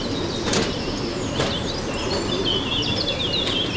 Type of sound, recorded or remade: recorded